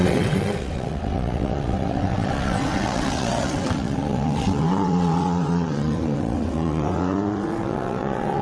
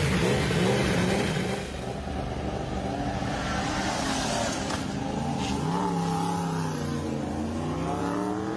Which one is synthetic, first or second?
first